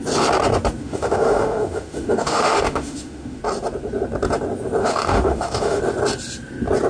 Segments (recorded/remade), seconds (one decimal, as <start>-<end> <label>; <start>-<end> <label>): 0.0-0.8 recorded; 0.8-3.4 remade; 3.4-4.8 recorded; 4.8-5.8 remade; 5.8-6.9 recorded